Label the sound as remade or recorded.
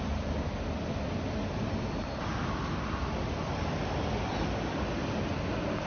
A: recorded